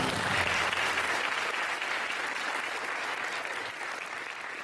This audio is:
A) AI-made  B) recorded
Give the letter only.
B